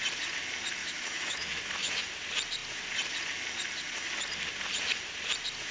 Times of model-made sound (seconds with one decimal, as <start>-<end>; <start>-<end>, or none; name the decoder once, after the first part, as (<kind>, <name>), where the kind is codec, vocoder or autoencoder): 0.8-2.0 (autoencoder, DAC-VAE)